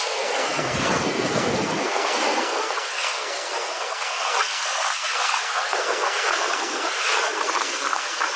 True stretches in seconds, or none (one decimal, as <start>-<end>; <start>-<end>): none